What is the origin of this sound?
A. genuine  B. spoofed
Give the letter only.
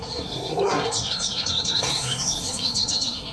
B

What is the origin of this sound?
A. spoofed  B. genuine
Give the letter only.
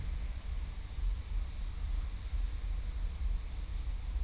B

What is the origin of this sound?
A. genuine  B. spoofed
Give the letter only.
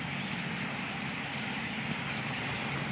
A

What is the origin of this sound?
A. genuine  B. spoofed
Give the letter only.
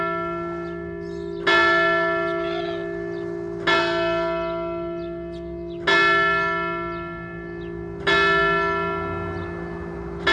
A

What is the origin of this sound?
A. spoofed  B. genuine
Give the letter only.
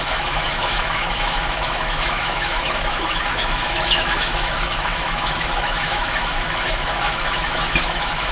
A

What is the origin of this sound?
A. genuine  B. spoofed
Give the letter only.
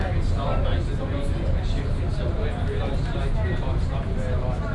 A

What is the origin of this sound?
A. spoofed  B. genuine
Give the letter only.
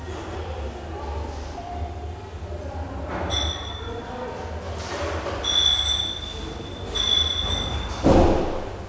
B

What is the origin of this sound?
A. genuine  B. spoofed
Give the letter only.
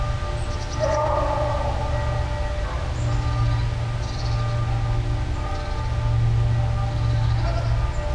A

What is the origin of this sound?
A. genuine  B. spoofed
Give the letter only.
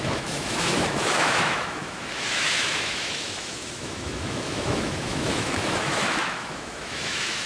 B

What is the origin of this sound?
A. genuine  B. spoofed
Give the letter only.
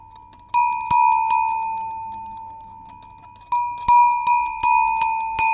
A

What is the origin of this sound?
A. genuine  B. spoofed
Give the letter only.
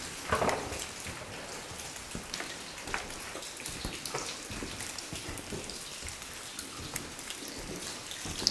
A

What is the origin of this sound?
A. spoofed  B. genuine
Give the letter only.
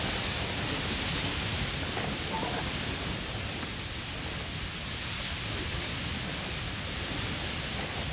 B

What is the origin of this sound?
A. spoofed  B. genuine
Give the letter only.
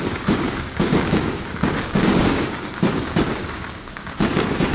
A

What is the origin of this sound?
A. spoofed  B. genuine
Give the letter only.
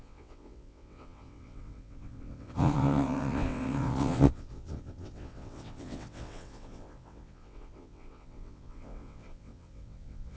A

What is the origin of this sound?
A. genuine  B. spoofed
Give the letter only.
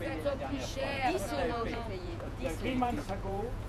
B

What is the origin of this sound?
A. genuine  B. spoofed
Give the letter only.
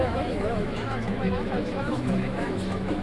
B